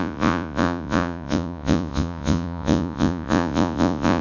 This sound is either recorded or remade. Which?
remade